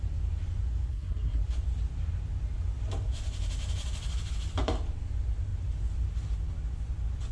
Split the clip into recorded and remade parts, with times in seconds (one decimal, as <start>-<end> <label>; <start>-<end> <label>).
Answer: 0.0-0.9 recorded; 0.9-1.4 remade; 1.4-7.3 recorded